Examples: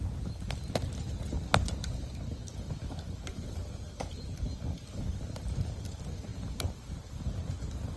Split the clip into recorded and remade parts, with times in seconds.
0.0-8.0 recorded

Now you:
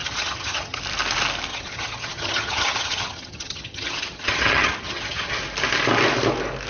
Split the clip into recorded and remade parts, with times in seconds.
0.0-0.8 remade; 0.8-1.5 recorded; 1.5-5.4 remade; 5.4-6.7 recorded

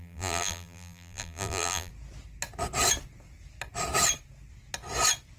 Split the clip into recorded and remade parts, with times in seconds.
0.0-1.9 remade; 1.9-5.4 recorded

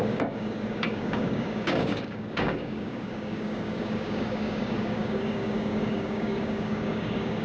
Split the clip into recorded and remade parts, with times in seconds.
0.0-7.4 remade